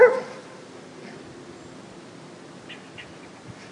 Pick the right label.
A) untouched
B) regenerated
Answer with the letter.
A